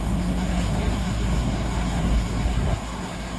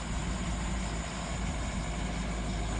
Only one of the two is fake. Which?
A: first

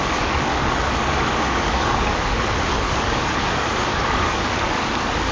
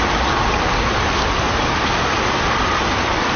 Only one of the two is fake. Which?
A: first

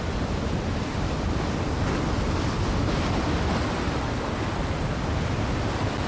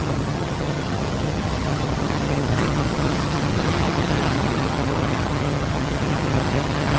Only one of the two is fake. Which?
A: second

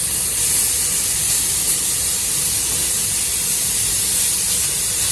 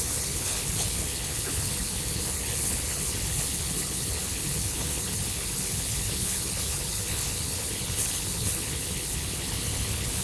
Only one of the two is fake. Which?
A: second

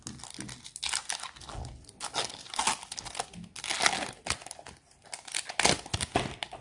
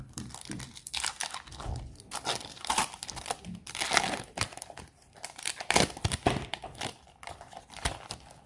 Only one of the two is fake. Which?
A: second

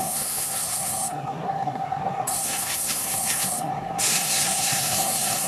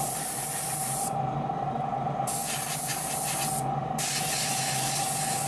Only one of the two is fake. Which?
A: first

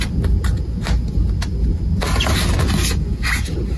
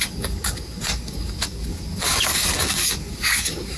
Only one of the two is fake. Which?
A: second